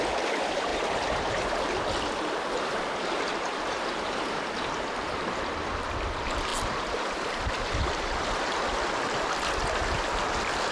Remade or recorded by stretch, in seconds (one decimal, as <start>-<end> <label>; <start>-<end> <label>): 0.0-10.7 recorded